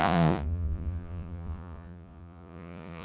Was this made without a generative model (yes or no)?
no